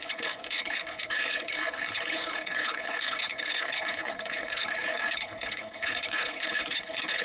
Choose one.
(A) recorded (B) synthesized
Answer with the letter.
B